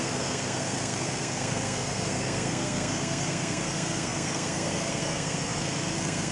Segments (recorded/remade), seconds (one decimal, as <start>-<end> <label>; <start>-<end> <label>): 0.0-6.3 remade